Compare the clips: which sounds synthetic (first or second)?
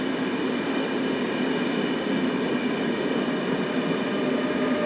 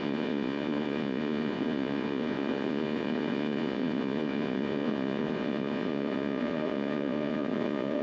second